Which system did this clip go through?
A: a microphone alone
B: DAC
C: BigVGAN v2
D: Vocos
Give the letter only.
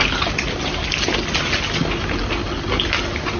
A